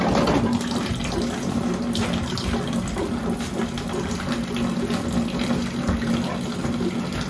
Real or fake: real